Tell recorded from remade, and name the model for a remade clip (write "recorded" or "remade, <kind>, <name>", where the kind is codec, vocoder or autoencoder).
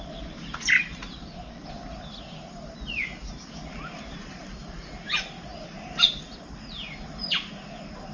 recorded